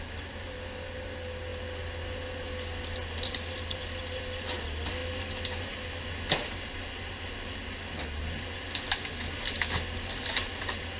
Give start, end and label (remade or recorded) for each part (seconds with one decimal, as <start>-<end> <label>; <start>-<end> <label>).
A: 0.0-11.0 recorded